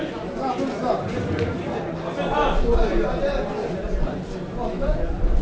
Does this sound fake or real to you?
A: real